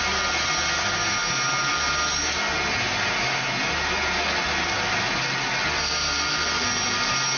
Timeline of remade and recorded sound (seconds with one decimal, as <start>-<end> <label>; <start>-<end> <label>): 0.0-7.4 recorded